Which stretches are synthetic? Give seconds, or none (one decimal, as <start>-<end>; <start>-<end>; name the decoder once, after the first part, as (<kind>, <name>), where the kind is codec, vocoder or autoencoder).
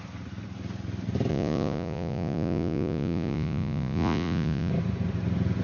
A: 1.3-4.7 (vocoder, Vocos)